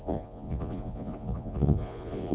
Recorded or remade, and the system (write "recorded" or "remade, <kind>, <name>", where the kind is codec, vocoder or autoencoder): remade, vocoder, Vocos